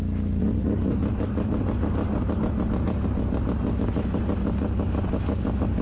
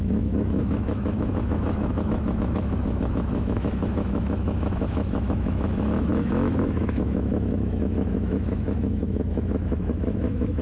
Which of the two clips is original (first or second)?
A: first